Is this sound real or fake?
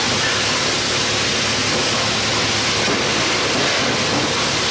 real